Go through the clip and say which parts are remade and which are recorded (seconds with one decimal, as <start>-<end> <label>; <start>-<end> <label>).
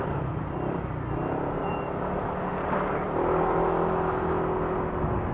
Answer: 0.0-5.3 recorded